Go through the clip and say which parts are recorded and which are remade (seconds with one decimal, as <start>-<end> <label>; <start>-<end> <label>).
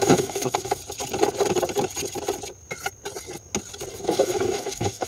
0.0-0.8 remade; 0.8-3.9 recorded; 3.9-5.1 remade